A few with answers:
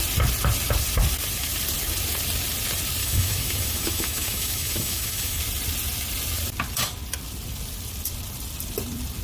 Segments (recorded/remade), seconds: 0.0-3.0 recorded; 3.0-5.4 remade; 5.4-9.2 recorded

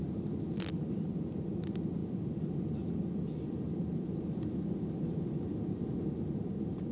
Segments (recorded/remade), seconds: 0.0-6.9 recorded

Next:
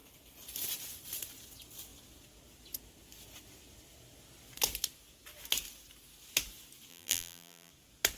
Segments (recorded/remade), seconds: 0.0-6.9 recorded; 6.9-7.7 remade; 7.7-8.2 recorded

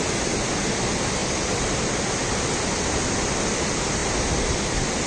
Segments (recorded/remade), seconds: 0.0-5.1 recorded

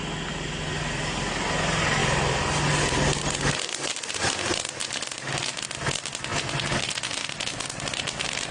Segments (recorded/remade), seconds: 0.0-8.5 recorded